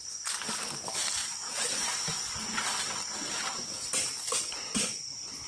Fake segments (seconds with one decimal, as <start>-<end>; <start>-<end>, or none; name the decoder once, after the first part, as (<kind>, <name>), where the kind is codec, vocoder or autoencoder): 1.2-1.9 (vocoder, Vocos)